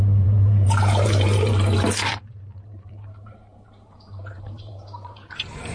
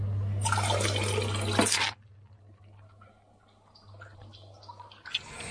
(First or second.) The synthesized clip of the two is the first